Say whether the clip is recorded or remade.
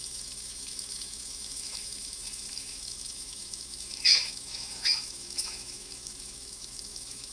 remade